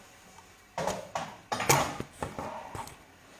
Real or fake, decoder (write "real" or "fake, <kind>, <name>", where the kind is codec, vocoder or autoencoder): real